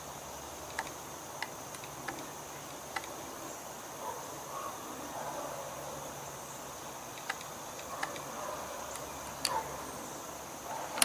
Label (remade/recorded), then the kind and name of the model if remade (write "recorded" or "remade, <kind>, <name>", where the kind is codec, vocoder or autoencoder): recorded